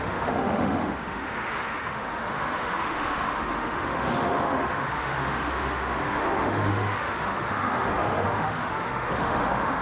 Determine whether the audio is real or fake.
fake